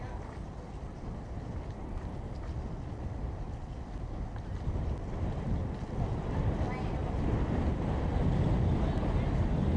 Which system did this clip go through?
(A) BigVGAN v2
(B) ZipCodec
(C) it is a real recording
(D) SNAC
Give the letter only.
C